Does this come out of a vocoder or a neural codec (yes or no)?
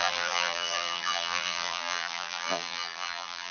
yes